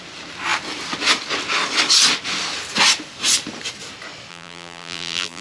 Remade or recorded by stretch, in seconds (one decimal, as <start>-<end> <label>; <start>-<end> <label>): 0.0-4.3 recorded; 4.3-5.4 remade